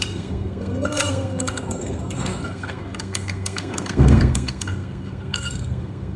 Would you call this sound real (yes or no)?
no